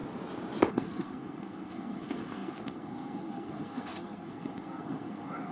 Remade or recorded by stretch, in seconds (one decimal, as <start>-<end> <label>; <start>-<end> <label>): 0.0-0.7 recorded; 0.7-5.5 remade